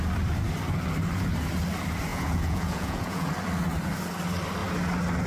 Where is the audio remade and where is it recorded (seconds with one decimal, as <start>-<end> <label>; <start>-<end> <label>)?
0.0-2.1 recorded; 2.1-3.3 remade; 3.3-5.3 recorded